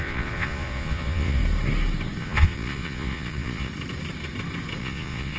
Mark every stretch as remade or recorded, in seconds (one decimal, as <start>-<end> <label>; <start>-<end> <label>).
0.0-1.4 remade; 1.4-2.2 recorded; 2.2-3.7 remade; 3.7-4.8 recorded; 4.8-5.4 remade